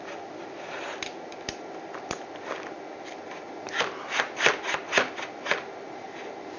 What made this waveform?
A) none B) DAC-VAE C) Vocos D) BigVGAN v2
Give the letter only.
A